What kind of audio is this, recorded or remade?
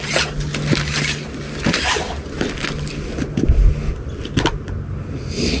recorded